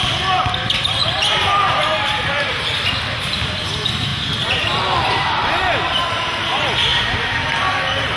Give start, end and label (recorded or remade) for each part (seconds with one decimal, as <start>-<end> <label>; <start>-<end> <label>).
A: 0.0-1.0 recorded; 1.0-2.6 remade; 2.6-8.2 recorded